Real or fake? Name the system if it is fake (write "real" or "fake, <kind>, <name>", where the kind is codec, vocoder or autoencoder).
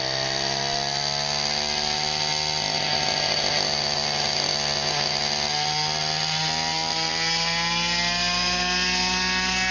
real